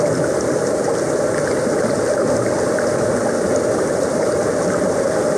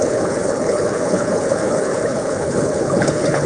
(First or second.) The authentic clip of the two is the first